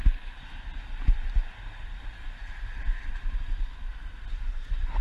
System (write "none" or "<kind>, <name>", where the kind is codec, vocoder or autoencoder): none